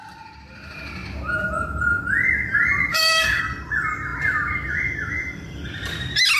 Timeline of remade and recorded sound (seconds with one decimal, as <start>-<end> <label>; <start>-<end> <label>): 0.0-2.9 recorded; 2.9-3.4 remade; 3.4-6.4 recorded